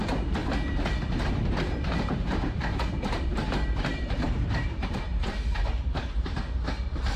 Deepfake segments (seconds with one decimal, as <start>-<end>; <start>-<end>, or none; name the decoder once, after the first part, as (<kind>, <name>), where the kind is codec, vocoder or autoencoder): 0.0-0.4 (vocoder, BigVGAN v2); 1.3-7.2